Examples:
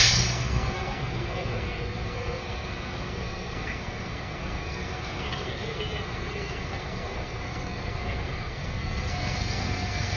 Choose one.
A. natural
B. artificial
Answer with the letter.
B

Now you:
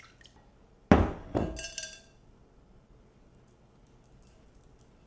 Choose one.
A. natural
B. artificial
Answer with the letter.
A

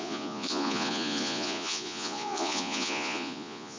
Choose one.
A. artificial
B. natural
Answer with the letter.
A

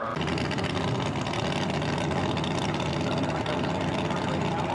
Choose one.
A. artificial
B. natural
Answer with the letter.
B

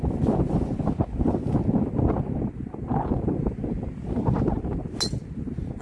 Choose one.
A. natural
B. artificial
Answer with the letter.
A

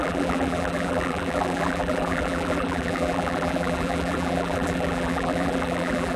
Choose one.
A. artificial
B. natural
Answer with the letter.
A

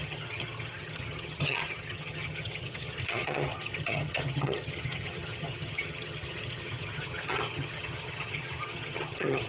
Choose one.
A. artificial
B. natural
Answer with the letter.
A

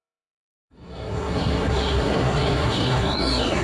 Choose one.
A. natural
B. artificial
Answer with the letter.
B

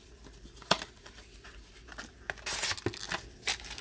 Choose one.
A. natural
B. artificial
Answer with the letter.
A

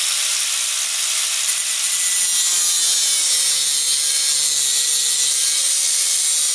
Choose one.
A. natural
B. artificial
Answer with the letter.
A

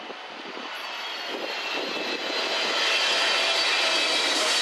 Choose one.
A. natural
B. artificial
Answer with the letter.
A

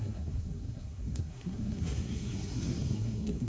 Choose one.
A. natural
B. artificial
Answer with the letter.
B